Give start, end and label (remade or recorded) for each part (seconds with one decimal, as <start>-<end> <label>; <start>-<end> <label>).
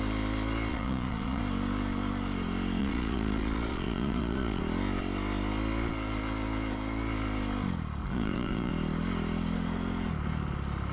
0.0-0.7 recorded; 0.7-1.4 remade; 1.4-2.8 recorded; 2.8-4.6 remade; 4.6-8.0 recorded; 8.0-8.7 remade; 8.7-10.9 recorded